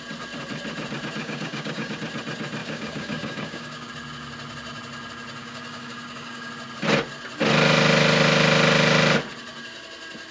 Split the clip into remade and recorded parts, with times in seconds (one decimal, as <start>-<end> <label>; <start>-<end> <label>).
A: 0.0-1.2 recorded; 1.2-1.9 remade; 1.9-2.6 recorded; 2.6-3.9 remade; 3.9-5.4 recorded; 5.4-6.5 remade; 6.5-10.3 recorded